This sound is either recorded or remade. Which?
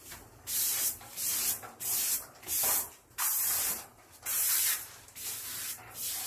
remade